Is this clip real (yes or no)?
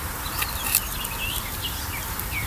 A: yes